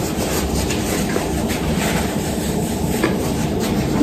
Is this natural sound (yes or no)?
no